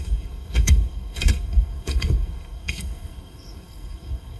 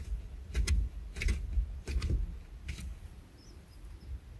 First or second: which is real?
second